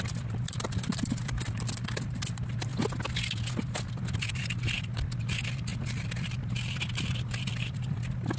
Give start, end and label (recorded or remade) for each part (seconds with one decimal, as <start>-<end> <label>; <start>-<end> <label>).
0.0-2.7 remade; 2.7-3.9 recorded; 3.9-8.4 remade